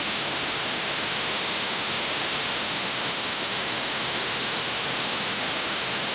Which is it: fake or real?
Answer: fake